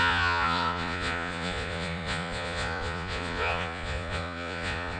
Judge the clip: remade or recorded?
remade